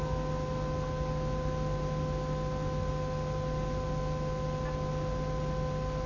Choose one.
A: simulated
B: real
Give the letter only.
B